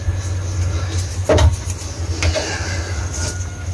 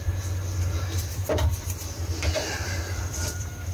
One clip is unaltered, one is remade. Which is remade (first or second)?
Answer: second